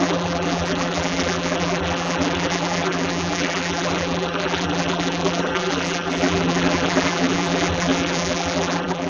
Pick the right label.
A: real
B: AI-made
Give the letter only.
B